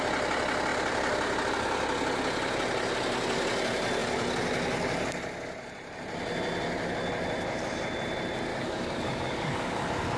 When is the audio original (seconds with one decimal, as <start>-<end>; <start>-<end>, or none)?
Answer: 0.0-8.5